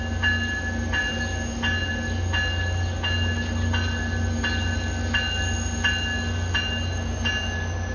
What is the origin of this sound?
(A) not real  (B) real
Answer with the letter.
B